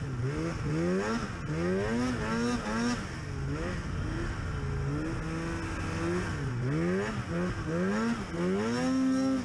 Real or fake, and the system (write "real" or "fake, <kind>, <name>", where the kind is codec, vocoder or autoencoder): real